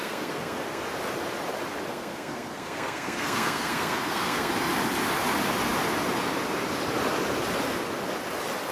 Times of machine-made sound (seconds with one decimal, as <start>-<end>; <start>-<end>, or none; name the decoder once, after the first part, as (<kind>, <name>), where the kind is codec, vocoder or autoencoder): 0.0-0.8 (codec, SNAC); 1.9-4.5